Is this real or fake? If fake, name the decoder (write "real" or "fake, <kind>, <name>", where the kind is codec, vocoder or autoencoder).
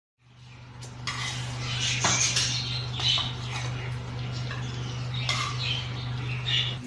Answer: real